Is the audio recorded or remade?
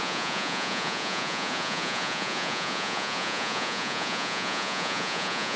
remade